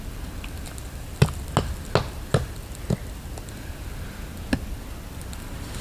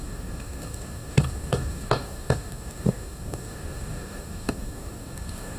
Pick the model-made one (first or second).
second